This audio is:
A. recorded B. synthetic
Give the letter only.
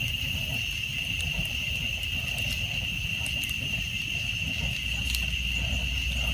A